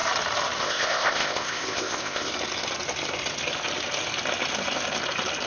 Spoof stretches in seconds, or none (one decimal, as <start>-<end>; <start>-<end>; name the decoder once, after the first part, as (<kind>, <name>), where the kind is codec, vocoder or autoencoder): 0.6-2.3 (codec, ZipCodec)